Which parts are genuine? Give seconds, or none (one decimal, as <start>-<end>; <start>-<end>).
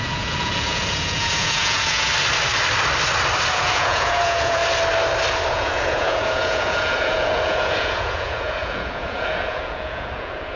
2.1-3.5; 4.6-5.5